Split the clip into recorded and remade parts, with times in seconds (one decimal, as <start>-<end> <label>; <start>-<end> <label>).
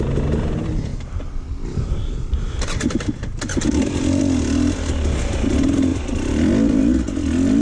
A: 0.0-0.9 recorded; 0.9-4.2 remade; 4.2-5.9 recorded; 5.9-6.8 remade; 6.8-7.6 recorded